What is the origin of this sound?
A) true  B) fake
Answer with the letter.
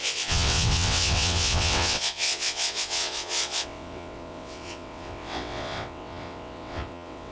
B